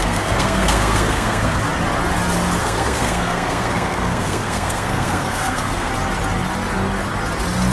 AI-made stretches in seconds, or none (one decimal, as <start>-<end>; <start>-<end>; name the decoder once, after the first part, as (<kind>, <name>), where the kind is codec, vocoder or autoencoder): 0.0-1.6 (codec, SNAC); 2.6-5.9